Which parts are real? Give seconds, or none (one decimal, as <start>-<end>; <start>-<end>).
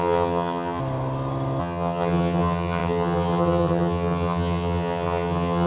0.8-1.6